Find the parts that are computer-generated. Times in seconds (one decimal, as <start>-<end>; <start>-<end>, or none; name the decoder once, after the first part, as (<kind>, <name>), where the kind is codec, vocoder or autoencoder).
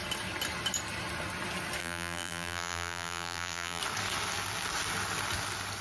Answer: 1.8-3.8 (vocoder, BigVGAN v2)